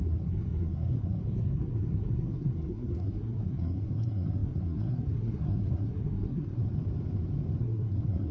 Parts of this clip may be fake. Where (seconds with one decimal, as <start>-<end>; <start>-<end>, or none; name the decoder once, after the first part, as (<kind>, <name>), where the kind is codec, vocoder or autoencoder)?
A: 0.0-6.6 (codec, SNAC); 7.6-8.3